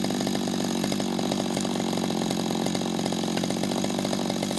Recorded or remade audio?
recorded